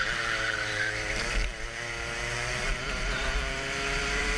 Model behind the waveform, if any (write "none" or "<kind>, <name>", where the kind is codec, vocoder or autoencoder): vocoder, BigVGAN v2